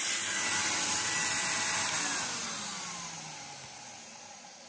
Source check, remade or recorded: recorded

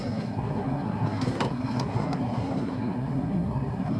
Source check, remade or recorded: remade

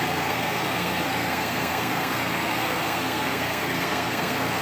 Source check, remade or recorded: remade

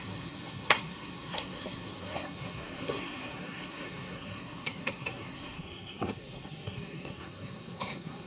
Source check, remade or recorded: remade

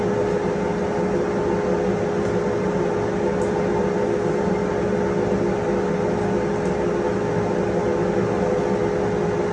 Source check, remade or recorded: recorded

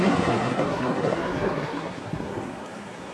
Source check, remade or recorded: remade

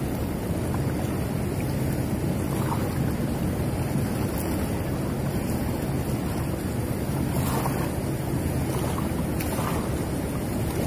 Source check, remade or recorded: recorded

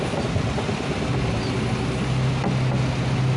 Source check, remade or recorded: recorded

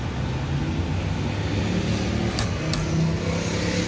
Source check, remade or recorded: recorded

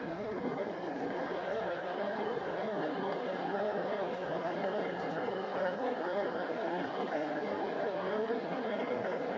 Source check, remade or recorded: remade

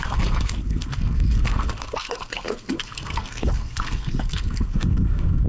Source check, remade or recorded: remade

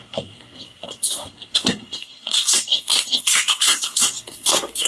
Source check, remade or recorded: remade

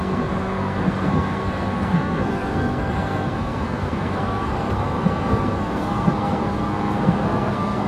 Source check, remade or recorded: remade